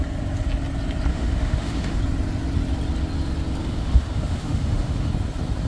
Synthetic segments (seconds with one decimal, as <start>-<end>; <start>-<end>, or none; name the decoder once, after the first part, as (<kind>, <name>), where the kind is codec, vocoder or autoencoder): 1.1-2.0 (autoencoder, DAC-VAE); 3.6-5.1

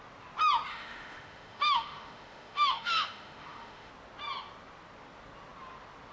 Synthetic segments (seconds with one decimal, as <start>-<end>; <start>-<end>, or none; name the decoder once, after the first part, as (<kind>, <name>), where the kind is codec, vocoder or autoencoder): 0.7-3.9 (autoencoder, DAC-VAE)

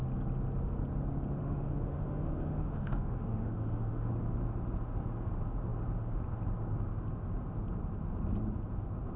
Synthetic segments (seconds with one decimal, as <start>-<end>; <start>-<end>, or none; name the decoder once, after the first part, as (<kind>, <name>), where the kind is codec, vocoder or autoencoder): 1.4-4.1 (autoencoder, DAC-VAE)

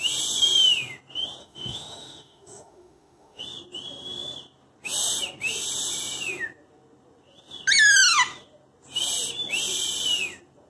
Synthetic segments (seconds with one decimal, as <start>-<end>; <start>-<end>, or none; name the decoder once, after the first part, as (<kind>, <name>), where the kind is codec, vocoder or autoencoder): 1.4-3.4 (autoencoder, DAC-VAE)

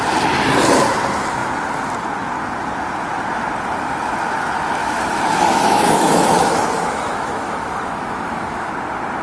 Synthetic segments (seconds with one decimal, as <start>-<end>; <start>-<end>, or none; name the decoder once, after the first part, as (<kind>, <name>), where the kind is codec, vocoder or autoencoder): 4.8-8.7 (autoencoder, DAC-VAE)

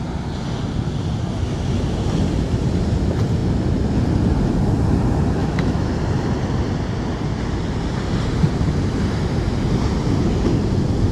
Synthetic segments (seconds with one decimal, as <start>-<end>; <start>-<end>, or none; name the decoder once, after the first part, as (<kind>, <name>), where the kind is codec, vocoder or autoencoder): 5.4-5.9 (autoencoder, DAC-VAE)

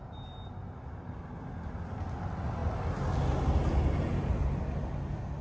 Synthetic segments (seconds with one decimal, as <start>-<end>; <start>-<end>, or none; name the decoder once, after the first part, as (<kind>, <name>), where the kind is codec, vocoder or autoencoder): none